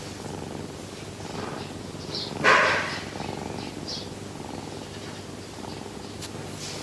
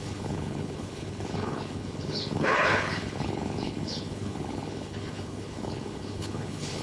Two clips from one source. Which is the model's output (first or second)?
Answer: second